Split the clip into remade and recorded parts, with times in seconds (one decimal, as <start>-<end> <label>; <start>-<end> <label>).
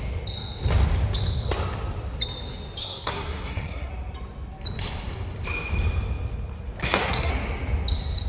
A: 0.0-2.8 recorded; 2.8-3.9 remade; 3.9-6.8 recorded; 6.8-7.3 remade; 7.3-8.3 recorded